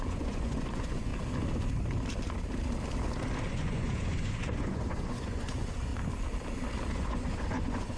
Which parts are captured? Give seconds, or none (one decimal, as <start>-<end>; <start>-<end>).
1.1-3.5; 5.9-6.9